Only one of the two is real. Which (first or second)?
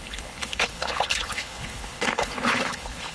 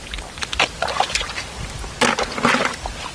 second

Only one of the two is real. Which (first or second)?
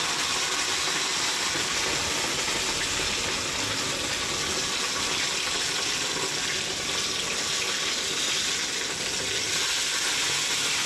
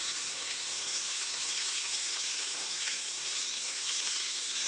first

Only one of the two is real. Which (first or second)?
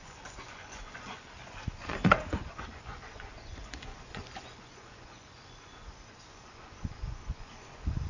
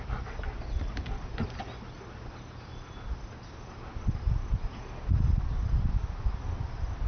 second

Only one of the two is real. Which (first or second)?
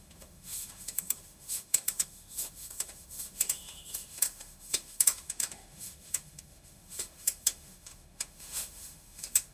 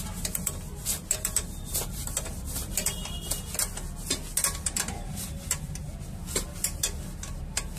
second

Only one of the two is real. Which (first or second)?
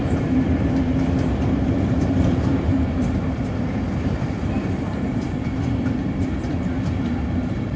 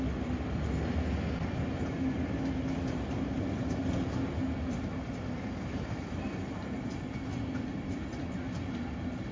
second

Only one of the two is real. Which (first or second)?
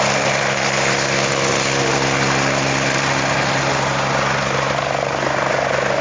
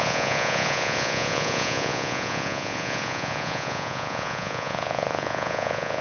first